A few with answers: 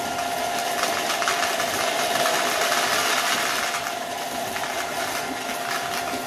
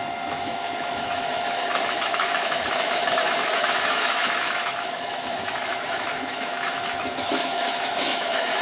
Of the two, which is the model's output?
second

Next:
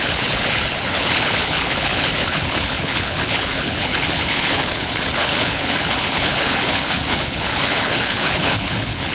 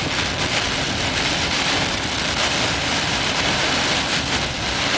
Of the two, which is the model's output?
first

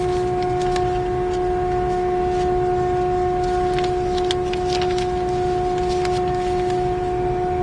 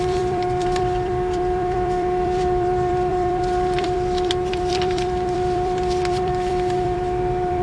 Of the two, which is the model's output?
second